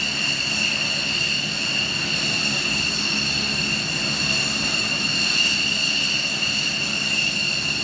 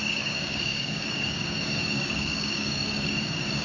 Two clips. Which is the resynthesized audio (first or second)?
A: second